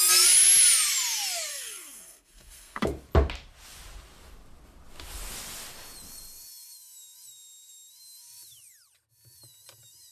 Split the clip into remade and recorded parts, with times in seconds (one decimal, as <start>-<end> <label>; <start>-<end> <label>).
0.0-1.5 recorded; 1.5-2.8 remade; 2.8-10.1 recorded

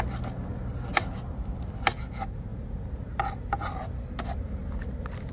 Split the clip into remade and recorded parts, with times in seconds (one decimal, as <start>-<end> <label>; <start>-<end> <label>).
0.0-5.3 recorded

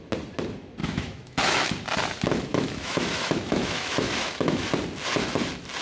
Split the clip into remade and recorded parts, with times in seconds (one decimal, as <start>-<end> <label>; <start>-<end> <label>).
0.0-0.8 recorded; 0.8-1.7 remade; 1.7-2.5 recorded; 2.5-4.7 remade; 4.7-5.8 recorded

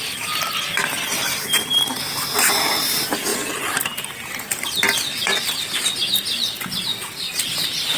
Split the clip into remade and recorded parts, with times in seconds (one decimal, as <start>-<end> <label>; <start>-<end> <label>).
0.0-8.0 recorded

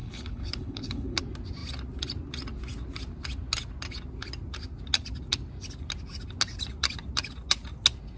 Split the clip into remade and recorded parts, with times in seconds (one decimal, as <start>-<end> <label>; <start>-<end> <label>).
0.0-1.2 remade; 1.2-8.2 recorded

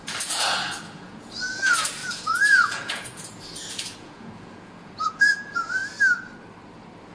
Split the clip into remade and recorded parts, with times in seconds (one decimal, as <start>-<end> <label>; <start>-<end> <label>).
0.0-5.8 remade; 5.8-7.1 recorded